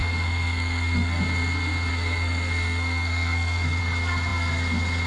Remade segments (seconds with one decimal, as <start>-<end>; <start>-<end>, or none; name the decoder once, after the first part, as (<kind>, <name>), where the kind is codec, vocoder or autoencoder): 0.0-1.2 (codec, SNAC); 1.9-3.8